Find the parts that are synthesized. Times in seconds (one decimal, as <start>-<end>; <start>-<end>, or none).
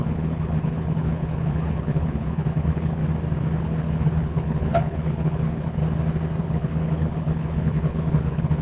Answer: 0.0-3.0; 3.6-5.8; 6.4-8.6